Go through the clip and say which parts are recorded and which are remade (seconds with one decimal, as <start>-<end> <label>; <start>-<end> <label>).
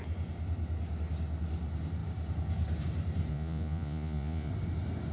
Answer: 0.0-3.3 recorded; 3.3-4.5 remade; 4.5-5.1 recorded